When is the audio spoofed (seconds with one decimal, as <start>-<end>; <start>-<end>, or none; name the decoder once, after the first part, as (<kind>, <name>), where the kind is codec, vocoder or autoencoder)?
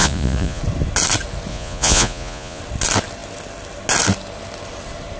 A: 0.0-0.6 (vocoder, Vocos); 1.5-2.6